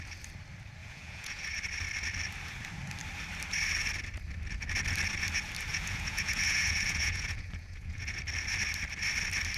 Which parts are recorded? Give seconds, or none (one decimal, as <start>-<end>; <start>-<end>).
0.0-0.8; 1.4-5.7; 8.2-9.6